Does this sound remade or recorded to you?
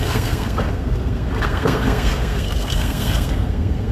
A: remade